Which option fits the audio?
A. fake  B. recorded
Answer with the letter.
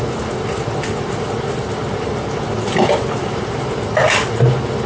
B